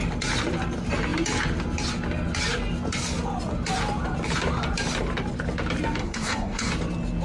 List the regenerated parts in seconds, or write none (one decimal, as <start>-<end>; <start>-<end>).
6.0-6.7